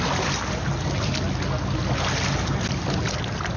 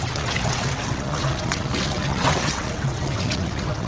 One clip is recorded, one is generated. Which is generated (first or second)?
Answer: second